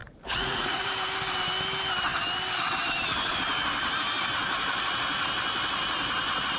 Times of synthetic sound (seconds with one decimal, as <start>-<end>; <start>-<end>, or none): 0.0-0.9